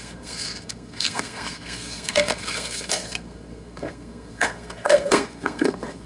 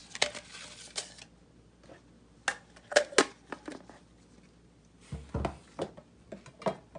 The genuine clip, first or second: second